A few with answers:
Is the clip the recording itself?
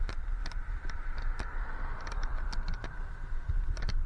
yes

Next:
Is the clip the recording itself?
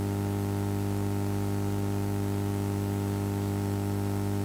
no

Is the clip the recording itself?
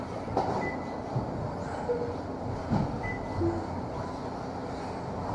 yes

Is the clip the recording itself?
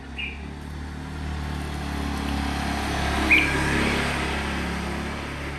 yes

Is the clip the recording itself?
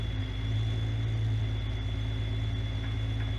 yes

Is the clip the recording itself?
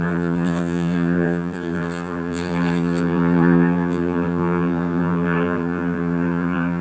no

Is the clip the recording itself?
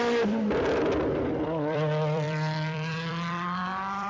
no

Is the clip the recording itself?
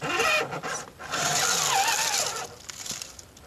yes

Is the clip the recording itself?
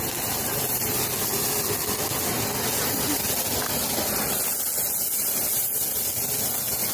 yes